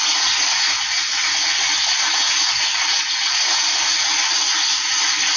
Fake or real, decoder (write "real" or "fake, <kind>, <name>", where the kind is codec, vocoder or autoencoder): real